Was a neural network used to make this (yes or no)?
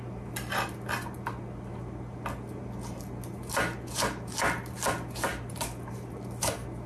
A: no